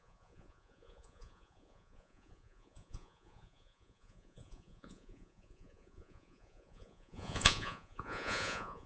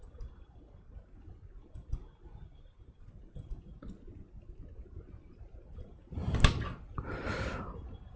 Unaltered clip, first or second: second